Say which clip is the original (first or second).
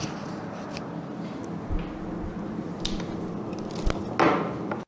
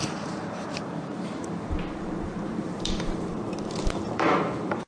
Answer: first